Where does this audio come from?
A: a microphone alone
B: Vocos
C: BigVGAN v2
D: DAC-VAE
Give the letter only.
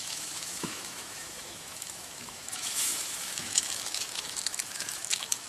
D